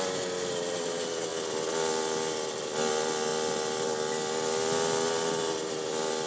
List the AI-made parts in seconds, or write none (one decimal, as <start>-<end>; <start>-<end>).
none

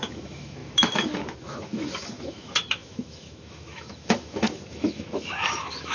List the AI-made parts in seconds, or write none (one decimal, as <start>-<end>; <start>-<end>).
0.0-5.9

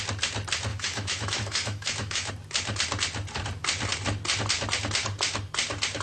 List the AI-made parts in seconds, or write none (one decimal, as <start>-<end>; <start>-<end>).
0.7-2.3